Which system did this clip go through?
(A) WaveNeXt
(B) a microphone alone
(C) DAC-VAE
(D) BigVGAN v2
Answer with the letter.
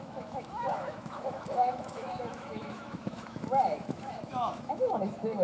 C